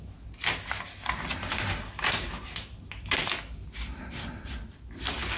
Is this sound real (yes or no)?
yes